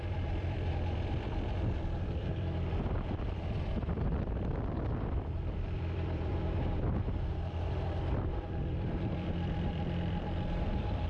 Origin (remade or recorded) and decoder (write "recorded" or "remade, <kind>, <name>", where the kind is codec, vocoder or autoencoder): remade, vocoder, BigVGAN v2